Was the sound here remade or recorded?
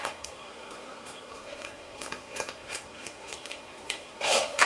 remade